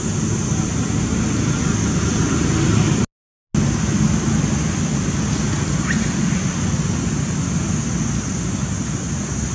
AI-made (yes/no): no